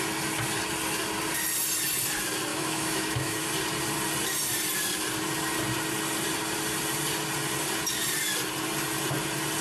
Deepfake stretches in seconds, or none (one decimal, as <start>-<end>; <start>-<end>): 2.5-3.5